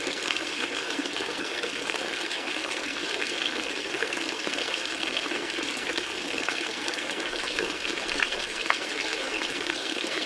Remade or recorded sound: remade